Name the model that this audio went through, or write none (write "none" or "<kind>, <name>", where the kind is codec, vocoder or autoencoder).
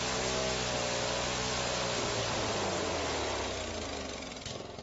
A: none